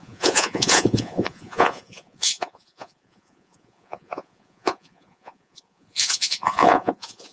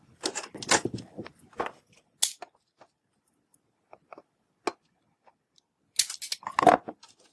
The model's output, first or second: first